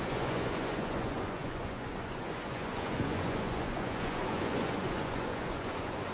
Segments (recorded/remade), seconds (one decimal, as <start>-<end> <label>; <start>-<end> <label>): 0.0-6.1 remade